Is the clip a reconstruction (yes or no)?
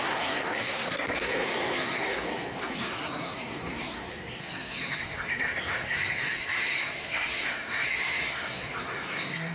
yes